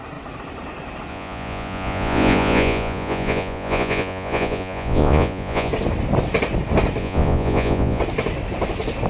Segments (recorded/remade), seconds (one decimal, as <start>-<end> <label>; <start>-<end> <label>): 0.0-1.1 recorded; 1.1-5.7 remade; 5.7-7.0 recorded; 7.0-8.0 remade; 8.0-9.1 recorded